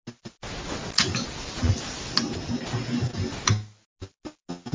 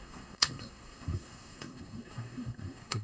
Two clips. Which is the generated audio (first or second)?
second